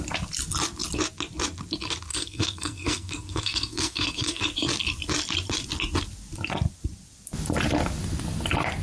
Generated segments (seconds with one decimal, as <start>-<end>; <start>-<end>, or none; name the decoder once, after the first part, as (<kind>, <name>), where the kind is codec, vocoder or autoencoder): 2.1-4.4 (codec, SNAC)